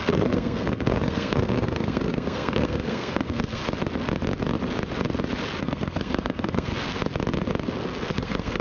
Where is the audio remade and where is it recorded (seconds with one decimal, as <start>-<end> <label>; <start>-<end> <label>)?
0.0-3.6 remade; 3.6-5.6 recorded; 5.6-6.7 remade; 6.7-8.1 recorded; 8.1-8.6 remade